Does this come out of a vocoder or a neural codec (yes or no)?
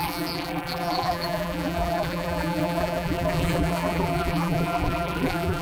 yes